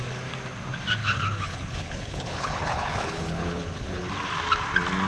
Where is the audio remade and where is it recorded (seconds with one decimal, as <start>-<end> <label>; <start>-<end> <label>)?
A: 0.0-1.0 recorded; 1.0-4.1 remade; 4.1-5.1 recorded